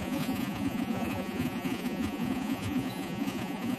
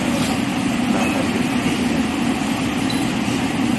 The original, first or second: second